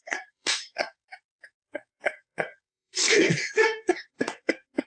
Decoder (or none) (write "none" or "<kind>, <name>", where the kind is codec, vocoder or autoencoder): codec, SNAC